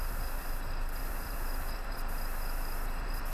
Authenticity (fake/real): fake